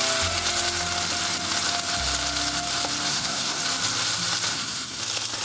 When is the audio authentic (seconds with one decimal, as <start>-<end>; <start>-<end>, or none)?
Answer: 0.0-3.1; 3.6-4.5; 5.0-5.4